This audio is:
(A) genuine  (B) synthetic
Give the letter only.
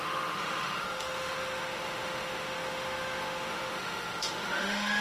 B